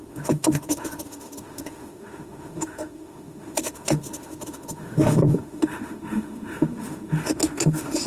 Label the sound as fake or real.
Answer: fake